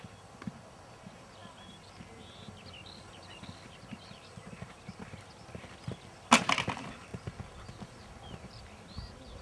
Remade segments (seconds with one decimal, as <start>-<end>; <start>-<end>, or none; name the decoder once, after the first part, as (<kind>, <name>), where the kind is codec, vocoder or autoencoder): none